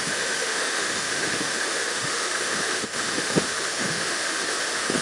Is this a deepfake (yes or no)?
yes